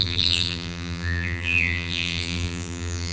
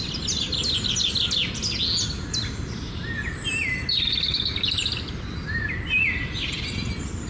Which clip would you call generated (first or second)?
first